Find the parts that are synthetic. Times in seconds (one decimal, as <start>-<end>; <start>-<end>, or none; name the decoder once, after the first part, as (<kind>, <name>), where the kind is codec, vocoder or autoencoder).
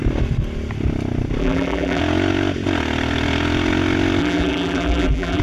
1.4-2.0 (vocoder, BigVGAN v2); 4.2-5.4